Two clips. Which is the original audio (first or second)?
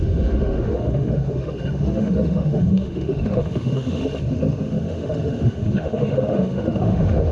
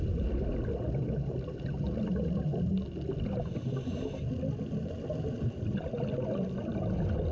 second